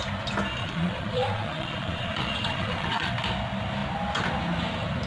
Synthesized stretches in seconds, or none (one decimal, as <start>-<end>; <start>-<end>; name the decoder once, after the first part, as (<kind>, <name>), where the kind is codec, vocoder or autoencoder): 0.6-3.1 (vocoder, Vocos)